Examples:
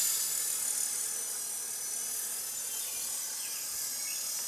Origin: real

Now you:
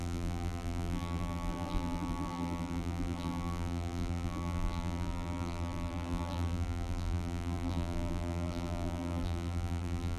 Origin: fake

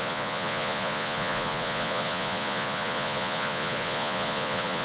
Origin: fake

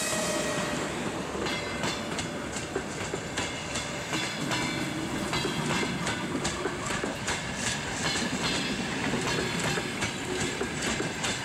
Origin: real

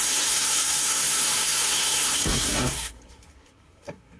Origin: fake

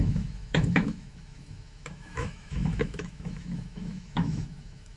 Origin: fake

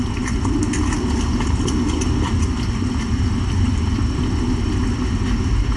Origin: real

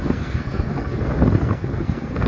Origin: fake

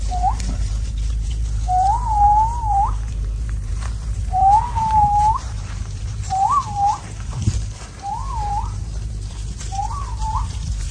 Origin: fake